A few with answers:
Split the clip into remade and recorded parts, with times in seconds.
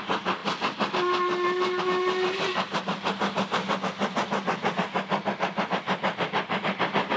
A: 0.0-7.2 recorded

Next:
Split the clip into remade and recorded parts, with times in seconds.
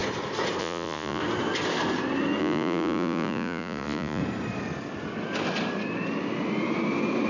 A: 0.0-0.6 recorded; 0.6-1.2 remade; 1.2-2.4 recorded; 2.4-4.2 remade; 4.2-7.3 recorded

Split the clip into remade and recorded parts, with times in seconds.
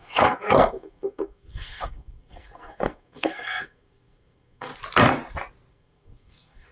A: 0.0-4.7 remade; 4.7-5.7 recorded; 5.7-6.7 remade